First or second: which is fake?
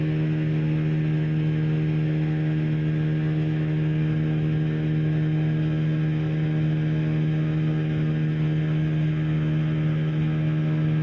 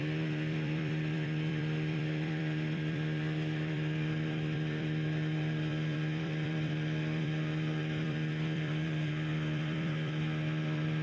second